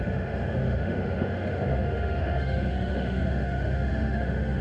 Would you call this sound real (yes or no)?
no